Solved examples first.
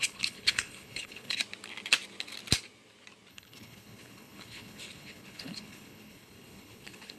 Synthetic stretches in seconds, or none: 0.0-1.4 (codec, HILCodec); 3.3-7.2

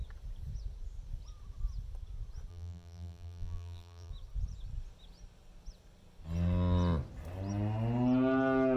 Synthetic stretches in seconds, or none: 2.5-4.1 (vocoder, BigVGAN v2)

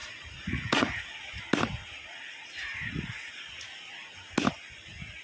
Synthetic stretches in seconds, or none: 0.0-1.4 (vocoder, Vocos); 1.8-3.5

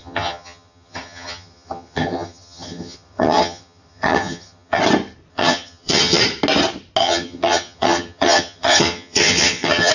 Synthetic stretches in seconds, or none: 0.0-4.8 (vocoder, HiFi-GAN); 5.3-6.2; 7.0-9.9